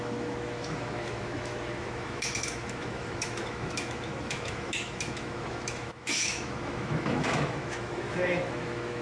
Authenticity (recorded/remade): remade